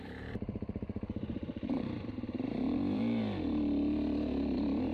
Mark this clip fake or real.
fake